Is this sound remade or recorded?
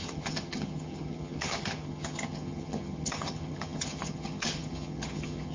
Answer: remade